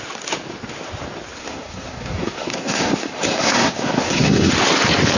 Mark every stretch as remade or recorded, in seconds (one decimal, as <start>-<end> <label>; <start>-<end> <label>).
0.0-1.4 recorded; 1.4-4.5 remade; 4.5-5.2 recorded